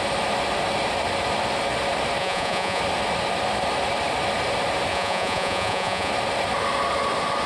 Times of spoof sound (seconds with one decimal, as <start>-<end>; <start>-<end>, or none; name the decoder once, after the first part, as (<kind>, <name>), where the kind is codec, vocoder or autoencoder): 2.2-2.8 (vocoder, Vocos); 4.9-6.1